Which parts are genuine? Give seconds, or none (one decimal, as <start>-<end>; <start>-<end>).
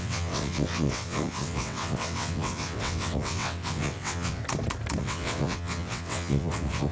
4.4-5.0